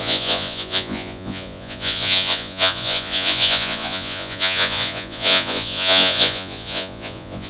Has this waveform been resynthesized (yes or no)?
yes